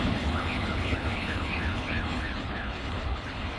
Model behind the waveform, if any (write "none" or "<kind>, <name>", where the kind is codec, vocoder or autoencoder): codec, HILCodec